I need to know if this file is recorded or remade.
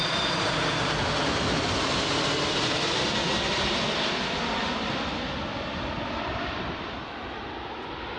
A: recorded